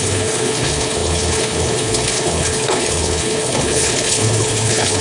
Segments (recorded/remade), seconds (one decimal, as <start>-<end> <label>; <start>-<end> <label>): 0.0-5.0 remade